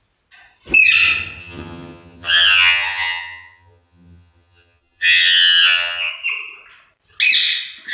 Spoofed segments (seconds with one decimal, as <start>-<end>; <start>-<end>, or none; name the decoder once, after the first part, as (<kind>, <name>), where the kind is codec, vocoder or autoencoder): 1.4-6.1 (vocoder, HiFi-GAN)